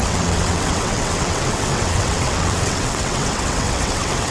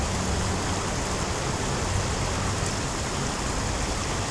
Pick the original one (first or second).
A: second